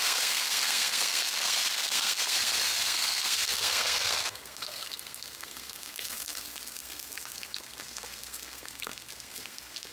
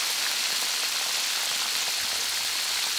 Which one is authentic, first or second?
second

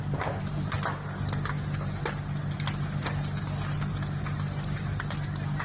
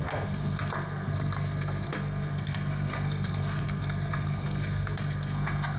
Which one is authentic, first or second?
first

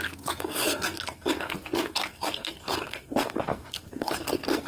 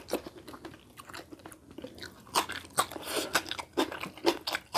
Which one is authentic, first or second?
second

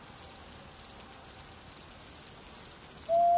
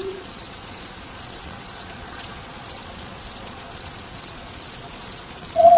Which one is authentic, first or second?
first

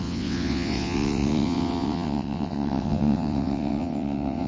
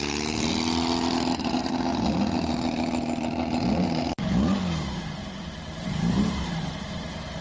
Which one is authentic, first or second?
second